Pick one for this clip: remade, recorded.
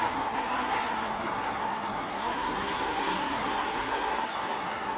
remade